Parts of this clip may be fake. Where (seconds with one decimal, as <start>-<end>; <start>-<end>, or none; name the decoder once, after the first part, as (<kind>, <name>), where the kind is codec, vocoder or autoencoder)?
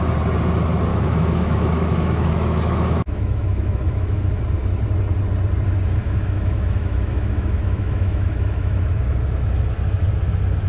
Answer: 0.9-4.4 (autoencoder, DAC-VAE); 6.0-8.8